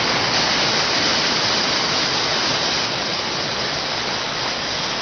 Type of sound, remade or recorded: recorded